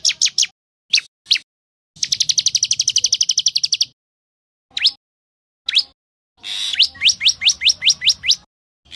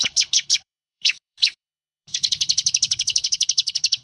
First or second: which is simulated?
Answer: second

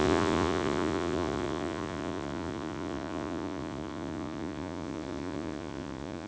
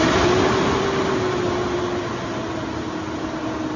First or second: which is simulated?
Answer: first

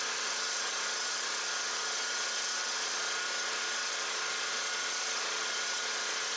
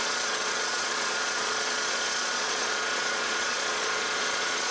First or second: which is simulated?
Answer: second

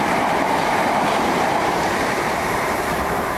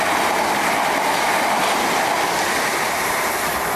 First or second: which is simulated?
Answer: first